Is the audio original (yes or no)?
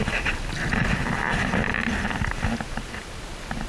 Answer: yes